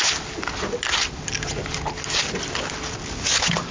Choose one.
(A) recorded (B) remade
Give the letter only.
A